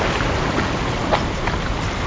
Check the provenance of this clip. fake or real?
real